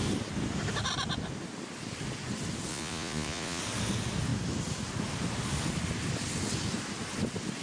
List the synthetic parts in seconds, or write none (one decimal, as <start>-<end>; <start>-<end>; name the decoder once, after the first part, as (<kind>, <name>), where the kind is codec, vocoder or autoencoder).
2.7-3.6 (vocoder, Vocos)